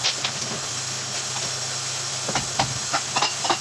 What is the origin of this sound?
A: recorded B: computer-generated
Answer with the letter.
A